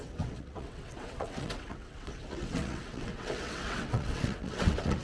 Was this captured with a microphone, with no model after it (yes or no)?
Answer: no